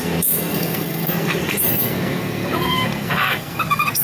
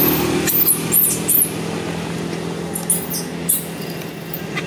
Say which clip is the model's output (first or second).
first